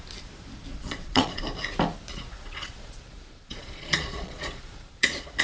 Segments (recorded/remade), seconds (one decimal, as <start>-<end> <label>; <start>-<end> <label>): 0.0-0.7 recorded; 0.7-1.4 remade; 1.4-2.1 recorded; 2.1-5.4 remade